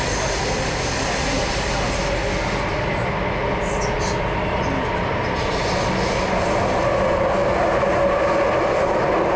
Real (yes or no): yes